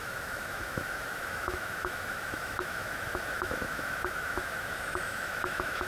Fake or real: fake